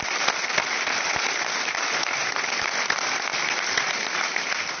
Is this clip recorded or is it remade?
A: recorded